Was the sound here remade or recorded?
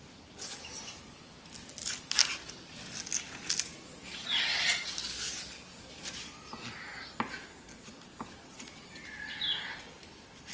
recorded